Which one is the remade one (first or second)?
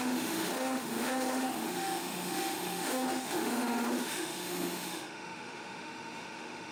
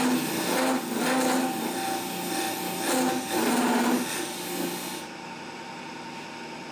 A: first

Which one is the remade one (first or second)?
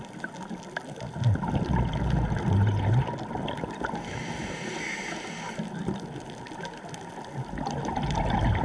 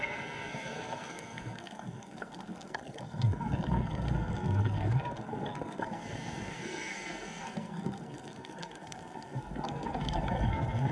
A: second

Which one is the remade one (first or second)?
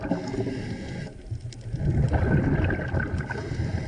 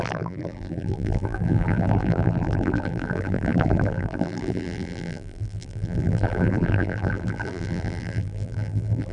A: second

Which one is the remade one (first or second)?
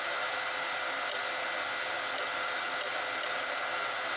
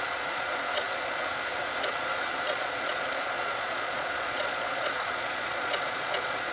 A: second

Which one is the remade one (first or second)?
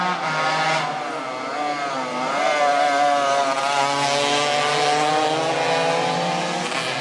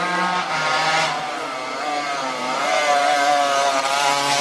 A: second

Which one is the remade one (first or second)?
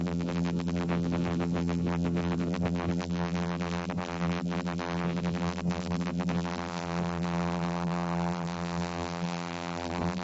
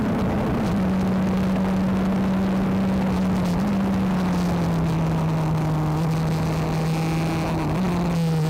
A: first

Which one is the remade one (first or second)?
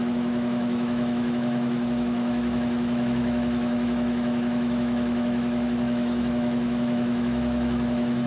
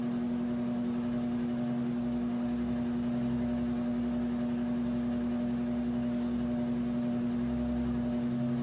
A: first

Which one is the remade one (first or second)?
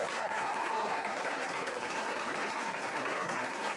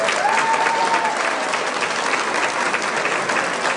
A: first